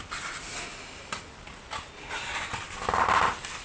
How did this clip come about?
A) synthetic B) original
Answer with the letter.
B